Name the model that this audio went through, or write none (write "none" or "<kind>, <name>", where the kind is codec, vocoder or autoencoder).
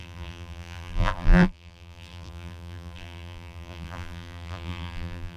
vocoder, BigVGAN v2